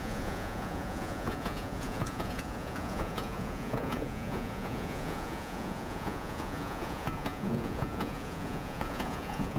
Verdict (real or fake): fake